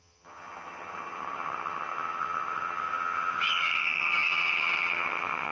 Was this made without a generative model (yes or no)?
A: no